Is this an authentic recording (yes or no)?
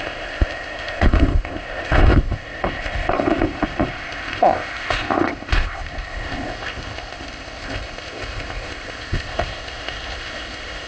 no